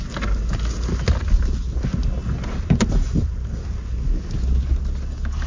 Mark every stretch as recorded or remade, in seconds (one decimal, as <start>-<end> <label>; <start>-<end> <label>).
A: 0.0-5.5 recorded